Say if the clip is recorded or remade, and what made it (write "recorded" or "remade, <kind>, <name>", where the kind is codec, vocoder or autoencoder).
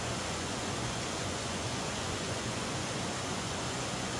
remade, vocoder, Vocos